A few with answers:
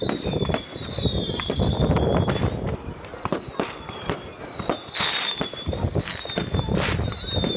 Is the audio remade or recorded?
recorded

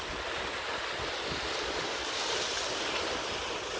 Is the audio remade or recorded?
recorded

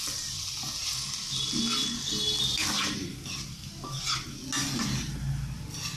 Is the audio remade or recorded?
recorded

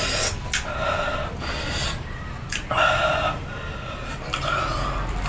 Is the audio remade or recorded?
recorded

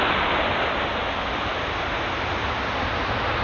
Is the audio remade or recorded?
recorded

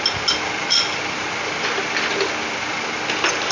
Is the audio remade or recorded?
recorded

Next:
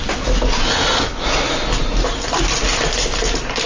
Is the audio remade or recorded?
recorded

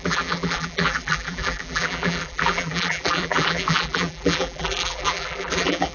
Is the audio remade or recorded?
remade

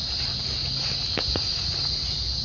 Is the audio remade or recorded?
recorded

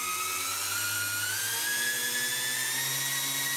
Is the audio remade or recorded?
recorded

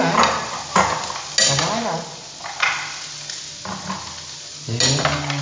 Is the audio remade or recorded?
recorded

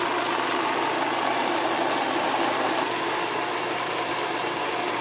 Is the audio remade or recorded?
recorded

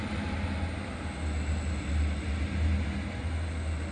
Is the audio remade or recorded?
recorded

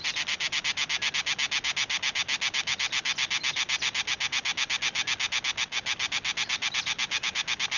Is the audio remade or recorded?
recorded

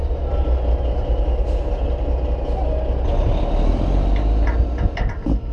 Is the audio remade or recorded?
recorded